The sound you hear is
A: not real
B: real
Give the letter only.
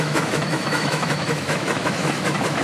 A